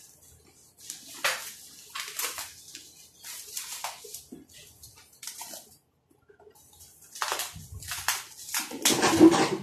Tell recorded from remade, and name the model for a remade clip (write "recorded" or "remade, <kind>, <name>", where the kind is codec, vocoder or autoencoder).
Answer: recorded